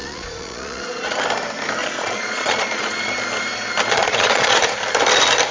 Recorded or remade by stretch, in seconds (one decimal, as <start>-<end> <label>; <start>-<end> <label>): 0.0-1.2 remade; 1.2-1.8 recorded; 1.8-3.1 remade; 3.1-3.9 recorded; 3.9-4.6 remade; 4.6-5.5 recorded